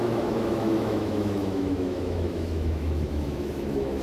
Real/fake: fake